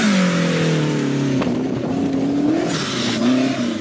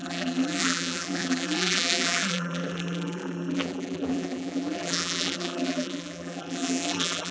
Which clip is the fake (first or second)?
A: second